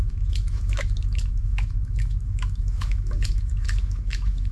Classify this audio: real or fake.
fake